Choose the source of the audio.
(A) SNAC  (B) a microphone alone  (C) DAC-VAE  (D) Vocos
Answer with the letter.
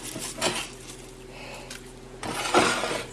B